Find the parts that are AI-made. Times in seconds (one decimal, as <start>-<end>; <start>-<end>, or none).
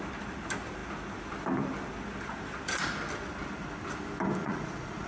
4.4-5.1